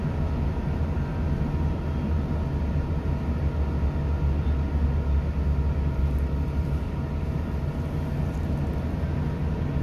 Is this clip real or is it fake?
real